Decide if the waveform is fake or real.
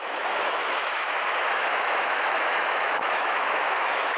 fake